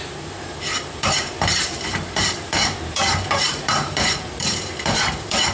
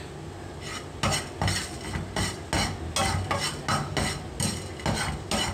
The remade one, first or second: first